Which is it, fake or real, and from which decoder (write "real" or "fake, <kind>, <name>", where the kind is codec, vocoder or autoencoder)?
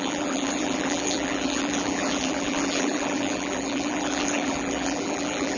fake, vocoder, BigVGAN v2